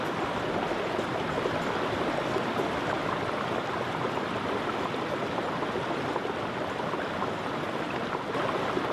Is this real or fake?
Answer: real